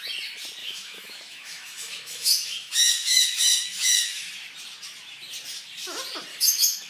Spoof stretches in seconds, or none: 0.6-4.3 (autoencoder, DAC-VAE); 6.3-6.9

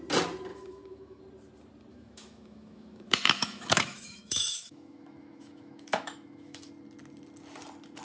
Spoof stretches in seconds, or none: 0.5-1.2 (autoencoder, DAC-VAE); 1.9-6.7

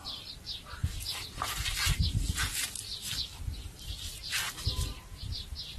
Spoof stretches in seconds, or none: none

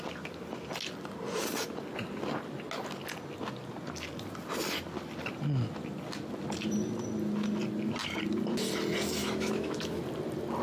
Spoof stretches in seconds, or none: 9.2-10.0 (autoencoder, DAC-VAE)

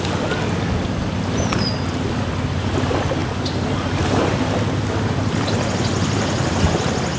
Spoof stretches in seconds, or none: none

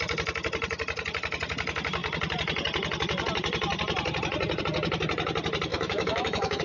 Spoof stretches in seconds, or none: 5.7-6.6 (autoencoder, DAC-VAE)

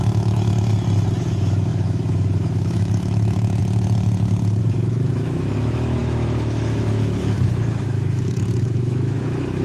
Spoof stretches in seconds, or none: 0.0-0.7 (autoencoder, DAC-VAE); 1.2-3.6; 4.6-9.6